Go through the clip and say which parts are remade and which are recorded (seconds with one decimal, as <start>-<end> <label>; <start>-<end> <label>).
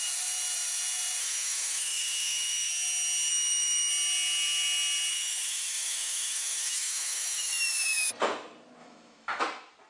0.0-1.2 recorded; 1.2-2.7 remade; 2.7-3.3 recorded; 3.3-3.9 remade; 3.9-5.1 recorded; 5.1-8.1 remade; 8.1-8.8 recorded; 8.8-9.4 remade; 9.4-9.9 recorded